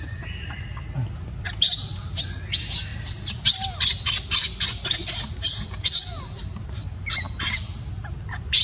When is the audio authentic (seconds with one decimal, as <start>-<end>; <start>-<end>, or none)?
0.0-8.6